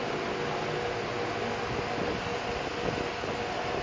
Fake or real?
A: real